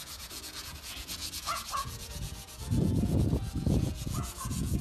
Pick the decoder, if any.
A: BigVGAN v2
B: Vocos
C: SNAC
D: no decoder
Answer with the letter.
B